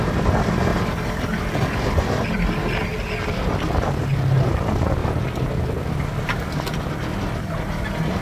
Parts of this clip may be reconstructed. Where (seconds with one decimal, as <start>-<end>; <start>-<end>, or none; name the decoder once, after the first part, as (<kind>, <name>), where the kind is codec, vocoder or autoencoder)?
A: 0.7-1.9 (vocoder, BigVGAN v2); 5.0-6.0